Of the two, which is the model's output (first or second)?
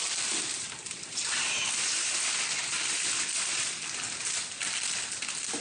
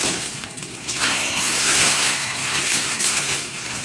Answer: second